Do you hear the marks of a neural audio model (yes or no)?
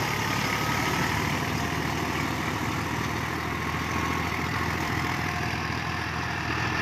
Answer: yes